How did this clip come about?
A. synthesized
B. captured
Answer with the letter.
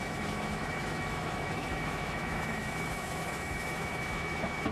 A